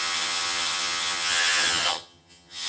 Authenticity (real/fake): fake